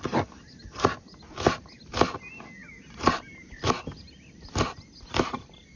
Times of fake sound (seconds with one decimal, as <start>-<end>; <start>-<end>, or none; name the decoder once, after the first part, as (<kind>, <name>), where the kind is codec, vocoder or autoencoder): 2.6-3.7 (vocoder, BigVGAN v2)